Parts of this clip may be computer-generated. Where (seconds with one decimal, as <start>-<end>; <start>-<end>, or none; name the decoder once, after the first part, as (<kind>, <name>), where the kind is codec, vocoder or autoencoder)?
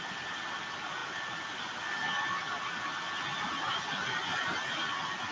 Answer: none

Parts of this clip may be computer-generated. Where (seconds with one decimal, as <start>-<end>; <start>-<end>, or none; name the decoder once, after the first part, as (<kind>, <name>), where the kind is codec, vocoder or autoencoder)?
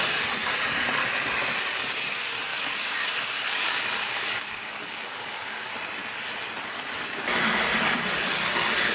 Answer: 2.5-5.7 (codec, DAC)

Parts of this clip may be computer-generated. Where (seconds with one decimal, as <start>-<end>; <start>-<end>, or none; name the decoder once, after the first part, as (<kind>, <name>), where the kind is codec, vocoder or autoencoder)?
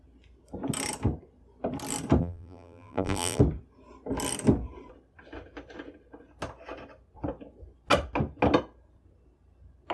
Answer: 2.2-3.4 (vocoder, BigVGAN v2)